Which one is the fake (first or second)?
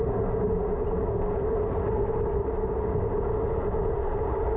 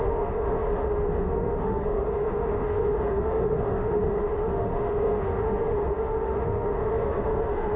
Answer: second